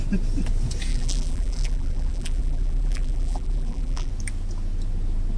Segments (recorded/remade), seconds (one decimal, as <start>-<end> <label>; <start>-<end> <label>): 0.0-0.9 recorded; 0.9-4.1 remade; 4.1-5.4 recorded